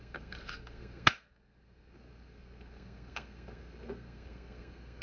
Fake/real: fake